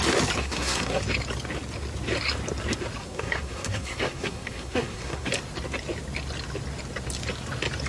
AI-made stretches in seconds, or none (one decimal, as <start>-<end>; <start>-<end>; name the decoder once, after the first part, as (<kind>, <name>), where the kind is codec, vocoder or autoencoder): 0.4-1.0 (codec, SNAC); 3.0-5.3